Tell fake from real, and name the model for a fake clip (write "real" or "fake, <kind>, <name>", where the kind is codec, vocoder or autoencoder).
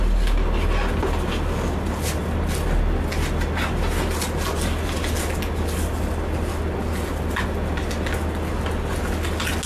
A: real